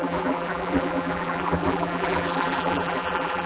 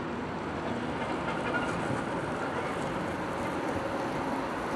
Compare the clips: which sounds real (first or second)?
second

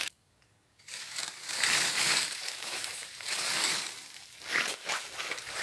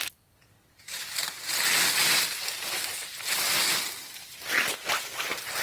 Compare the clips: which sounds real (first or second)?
second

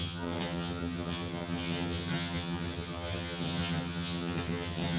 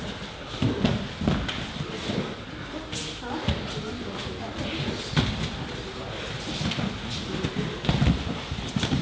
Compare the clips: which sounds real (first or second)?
second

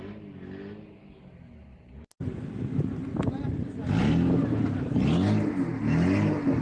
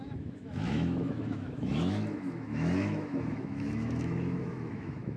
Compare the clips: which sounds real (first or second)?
first